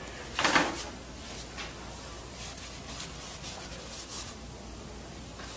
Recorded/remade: recorded